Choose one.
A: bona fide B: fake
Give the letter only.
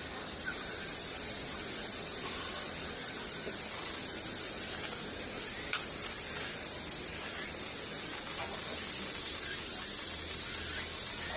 A